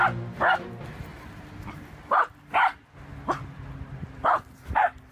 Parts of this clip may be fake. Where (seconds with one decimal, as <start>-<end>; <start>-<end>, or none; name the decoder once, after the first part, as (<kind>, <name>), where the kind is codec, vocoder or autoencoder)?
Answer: none